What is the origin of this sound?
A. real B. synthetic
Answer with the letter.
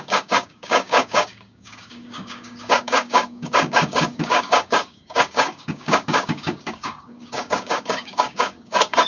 B